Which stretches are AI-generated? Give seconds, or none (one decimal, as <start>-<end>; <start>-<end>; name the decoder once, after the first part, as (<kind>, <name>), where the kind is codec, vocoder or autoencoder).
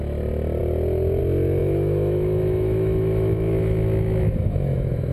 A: 1.6-5.1 (autoencoder, DAC-VAE)